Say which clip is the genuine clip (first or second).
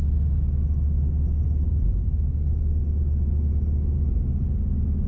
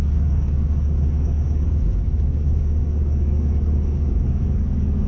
first